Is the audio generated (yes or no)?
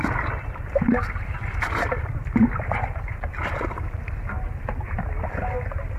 no